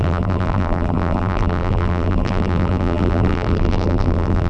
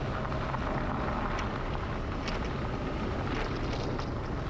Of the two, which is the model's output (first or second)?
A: first